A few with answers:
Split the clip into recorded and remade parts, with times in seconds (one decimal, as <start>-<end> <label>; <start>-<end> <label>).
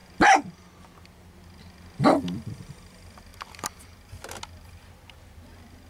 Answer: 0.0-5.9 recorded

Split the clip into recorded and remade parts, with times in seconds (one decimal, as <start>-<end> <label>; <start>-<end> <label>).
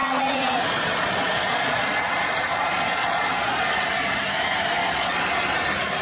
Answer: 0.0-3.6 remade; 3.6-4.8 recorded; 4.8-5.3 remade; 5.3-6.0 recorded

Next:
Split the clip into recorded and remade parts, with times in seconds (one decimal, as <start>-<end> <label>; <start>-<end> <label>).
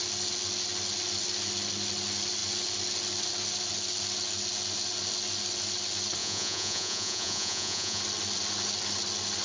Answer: 0.0-6.2 recorded; 6.2-8.0 remade; 8.0-9.4 recorded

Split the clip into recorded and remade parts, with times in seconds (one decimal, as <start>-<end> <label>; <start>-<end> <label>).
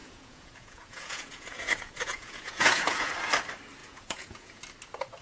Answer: 0.0-3.1 remade; 3.1-3.8 recorded; 3.8-4.6 remade; 4.6-5.2 recorded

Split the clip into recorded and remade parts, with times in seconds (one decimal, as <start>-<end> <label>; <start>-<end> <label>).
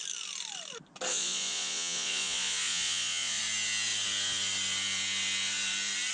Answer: 0.0-1.1 recorded; 1.1-3.4 remade; 3.4-6.1 recorded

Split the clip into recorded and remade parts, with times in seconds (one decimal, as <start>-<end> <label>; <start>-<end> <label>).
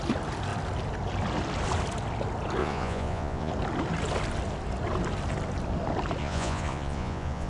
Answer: 0.0-2.6 recorded; 2.6-3.5 remade; 3.5-6.2 recorded; 6.2-7.5 remade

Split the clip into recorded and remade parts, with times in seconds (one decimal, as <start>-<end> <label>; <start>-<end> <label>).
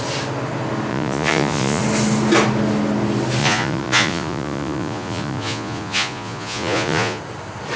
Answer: 0.0-0.9 recorded; 0.9-1.8 remade; 1.8-3.4 recorded; 3.4-7.2 remade; 7.2-7.8 recorded